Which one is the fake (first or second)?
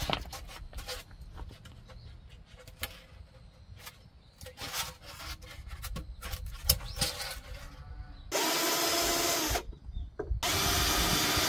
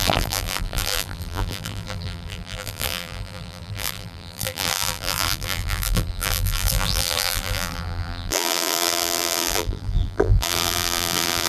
second